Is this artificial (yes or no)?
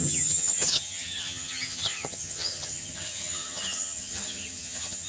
yes